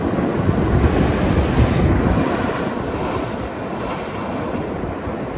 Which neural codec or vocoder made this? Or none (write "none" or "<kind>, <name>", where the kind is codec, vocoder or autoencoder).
none